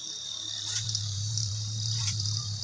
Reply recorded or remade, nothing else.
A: remade